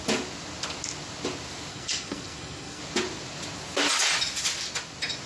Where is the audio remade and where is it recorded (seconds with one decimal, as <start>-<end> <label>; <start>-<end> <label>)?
0.0-1.7 recorded; 1.7-2.8 remade; 2.8-5.3 recorded